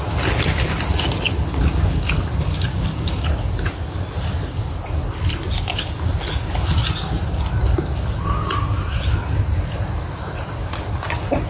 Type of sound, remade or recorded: recorded